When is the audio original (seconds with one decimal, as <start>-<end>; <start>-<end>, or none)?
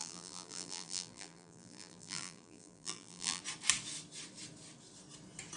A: 3.4-5.6